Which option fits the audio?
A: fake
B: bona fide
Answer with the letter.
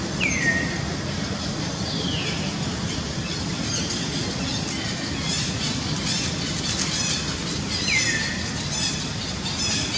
B